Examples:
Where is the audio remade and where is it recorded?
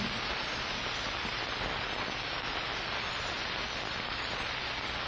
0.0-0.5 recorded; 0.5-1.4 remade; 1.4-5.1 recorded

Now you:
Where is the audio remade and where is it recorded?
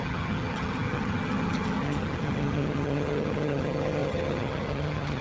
0.0-5.2 remade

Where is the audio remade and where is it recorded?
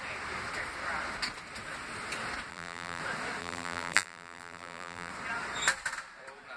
0.0-2.5 recorded; 2.5-3.0 remade; 3.0-3.4 recorded; 3.4-5.1 remade; 5.1-6.6 recorded